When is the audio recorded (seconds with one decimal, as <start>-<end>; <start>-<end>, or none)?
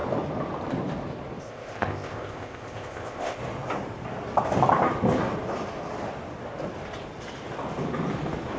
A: 0.0-1.4; 3.4-8.6